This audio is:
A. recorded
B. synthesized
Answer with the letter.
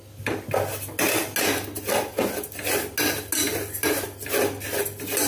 A